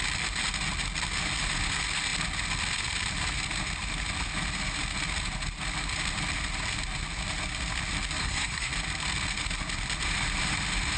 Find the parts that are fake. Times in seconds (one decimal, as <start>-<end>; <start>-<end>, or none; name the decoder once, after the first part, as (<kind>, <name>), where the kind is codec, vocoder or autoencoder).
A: 8.2-8.7 (codec, SNAC)

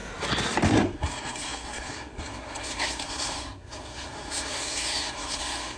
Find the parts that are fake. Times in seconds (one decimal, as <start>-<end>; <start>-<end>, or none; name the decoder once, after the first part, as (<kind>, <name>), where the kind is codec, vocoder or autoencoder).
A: 0.7-5.8 (codec, SNAC)